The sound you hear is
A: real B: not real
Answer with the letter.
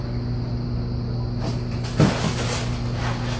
A